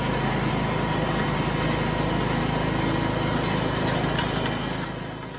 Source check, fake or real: real